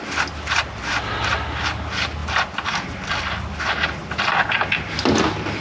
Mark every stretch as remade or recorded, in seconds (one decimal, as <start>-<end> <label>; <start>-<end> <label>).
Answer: 0.0-5.6 recorded

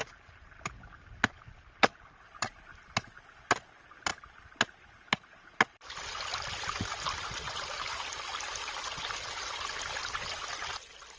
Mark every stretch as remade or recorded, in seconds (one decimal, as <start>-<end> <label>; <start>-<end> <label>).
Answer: 0.0-11.2 recorded

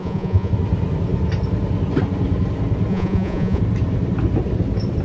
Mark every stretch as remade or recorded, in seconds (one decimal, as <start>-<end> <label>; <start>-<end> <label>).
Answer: 0.0-0.5 remade; 0.5-2.9 recorded; 2.9-3.6 remade; 3.6-5.0 recorded

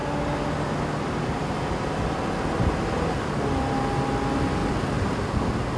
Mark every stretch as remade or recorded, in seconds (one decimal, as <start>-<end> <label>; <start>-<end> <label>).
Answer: 0.0-5.8 recorded

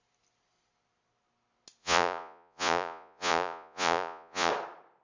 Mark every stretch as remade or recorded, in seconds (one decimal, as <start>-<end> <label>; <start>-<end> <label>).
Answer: 0.0-1.8 recorded; 1.8-4.5 remade; 4.5-5.0 recorded

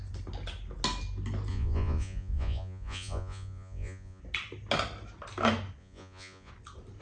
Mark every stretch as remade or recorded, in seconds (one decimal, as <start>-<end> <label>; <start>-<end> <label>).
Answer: 0.0-1.5 recorded; 1.5-4.2 remade; 4.2-5.8 recorded; 5.8-6.5 remade; 6.5-7.0 recorded

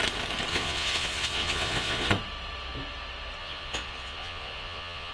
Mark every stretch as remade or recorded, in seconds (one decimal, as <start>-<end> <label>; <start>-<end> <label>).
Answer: 0.0-0.5 recorded; 0.5-2.1 remade; 2.1-3.4 recorded; 3.4-5.1 remade